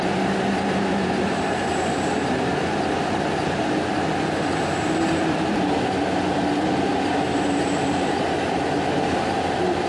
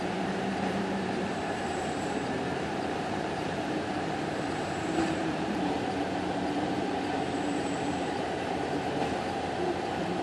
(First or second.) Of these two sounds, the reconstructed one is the second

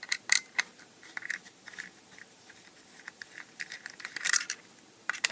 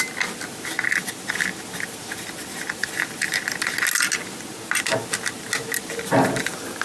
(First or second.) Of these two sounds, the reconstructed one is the first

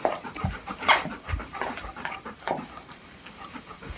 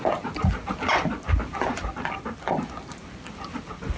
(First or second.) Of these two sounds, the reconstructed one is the first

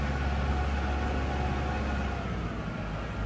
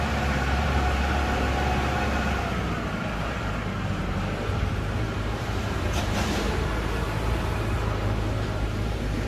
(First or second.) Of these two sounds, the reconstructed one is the second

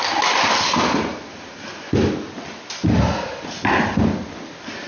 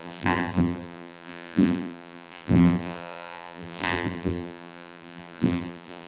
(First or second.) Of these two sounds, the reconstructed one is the second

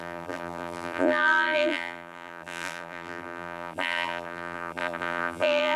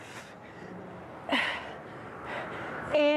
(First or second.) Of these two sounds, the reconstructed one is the first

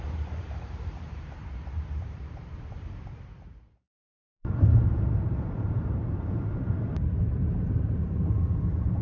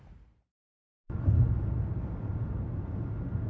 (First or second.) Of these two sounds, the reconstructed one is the first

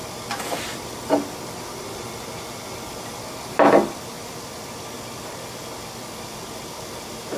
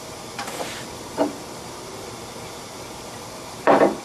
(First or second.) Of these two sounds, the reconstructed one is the second